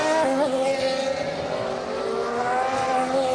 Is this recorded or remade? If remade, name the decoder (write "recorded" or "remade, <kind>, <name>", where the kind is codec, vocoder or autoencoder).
recorded